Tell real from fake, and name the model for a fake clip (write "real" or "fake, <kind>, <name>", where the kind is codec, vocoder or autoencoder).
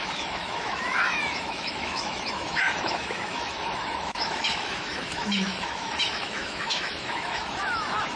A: fake, autoencoder, DAC-VAE